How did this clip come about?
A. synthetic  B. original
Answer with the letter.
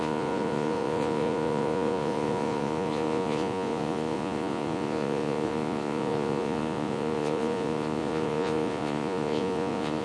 A